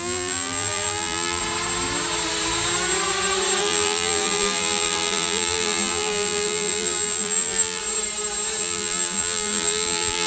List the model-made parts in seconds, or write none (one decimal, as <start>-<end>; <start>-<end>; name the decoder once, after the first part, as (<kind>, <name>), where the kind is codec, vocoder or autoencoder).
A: 0.0-1.4 (vocoder, BigVGAN v2); 3.6-7.8; 8.6-10.3